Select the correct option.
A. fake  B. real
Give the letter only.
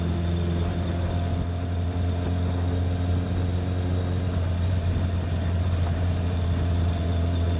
B